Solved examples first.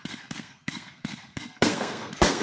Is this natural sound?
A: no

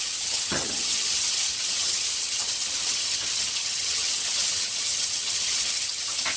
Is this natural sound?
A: no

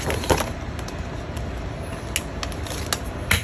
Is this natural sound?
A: yes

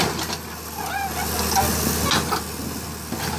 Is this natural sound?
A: yes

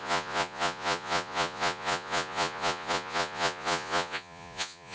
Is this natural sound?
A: no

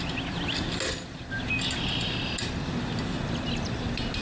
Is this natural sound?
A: yes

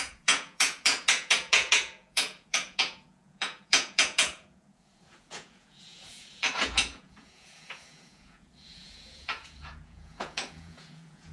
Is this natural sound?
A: no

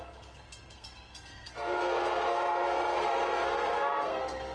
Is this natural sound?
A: no